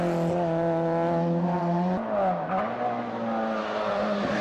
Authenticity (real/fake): real